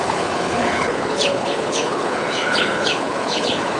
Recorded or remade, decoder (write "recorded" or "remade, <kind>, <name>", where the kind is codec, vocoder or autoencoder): remade, codec, HILCodec